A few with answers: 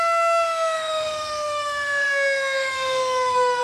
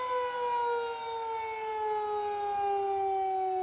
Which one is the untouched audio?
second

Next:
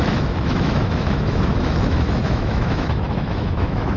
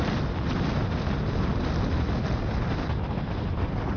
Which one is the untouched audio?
second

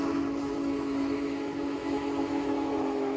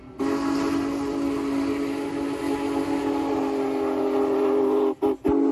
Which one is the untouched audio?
second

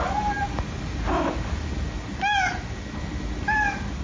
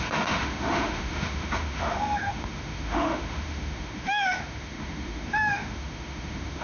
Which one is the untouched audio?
first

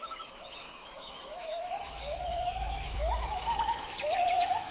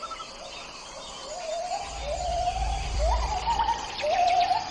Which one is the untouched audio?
second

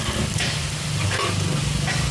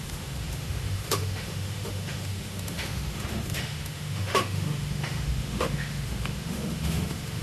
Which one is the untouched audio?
first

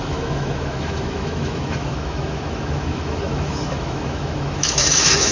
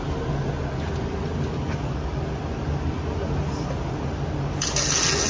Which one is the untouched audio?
second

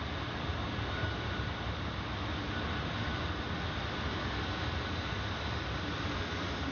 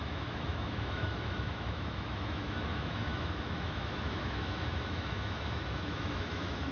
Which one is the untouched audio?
first